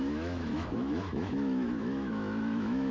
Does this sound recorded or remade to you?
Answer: remade